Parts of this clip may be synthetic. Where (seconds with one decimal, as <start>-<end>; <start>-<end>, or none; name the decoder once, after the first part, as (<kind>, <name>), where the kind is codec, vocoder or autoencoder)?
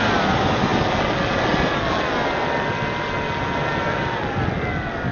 none